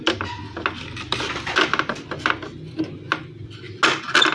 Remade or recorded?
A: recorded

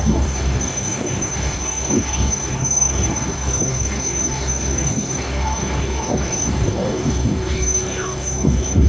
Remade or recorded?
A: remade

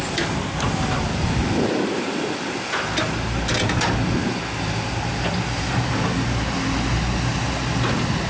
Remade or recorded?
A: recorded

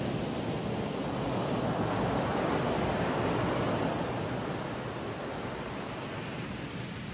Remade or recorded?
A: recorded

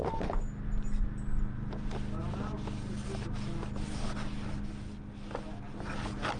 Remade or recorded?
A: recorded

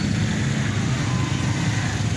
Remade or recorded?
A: recorded